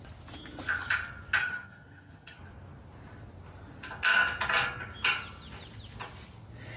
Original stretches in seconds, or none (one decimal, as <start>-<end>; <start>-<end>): 0.0-1.4; 2.4-6.8